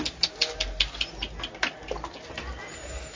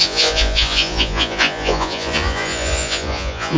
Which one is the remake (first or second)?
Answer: second